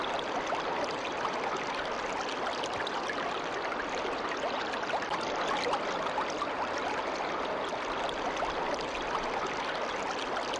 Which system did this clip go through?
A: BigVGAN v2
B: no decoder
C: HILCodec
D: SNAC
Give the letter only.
B